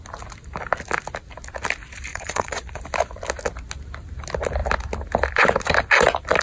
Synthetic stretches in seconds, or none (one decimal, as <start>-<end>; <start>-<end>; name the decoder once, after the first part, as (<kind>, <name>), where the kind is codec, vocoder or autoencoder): 2.1-2.8 (vocoder, Vocos)